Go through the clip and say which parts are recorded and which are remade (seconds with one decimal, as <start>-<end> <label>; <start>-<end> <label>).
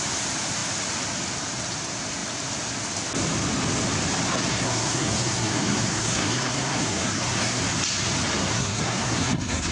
0.0-4.5 recorded; 4.5-7.6 remade; 7.6-8.4 recorded; 8.4-9.7 remade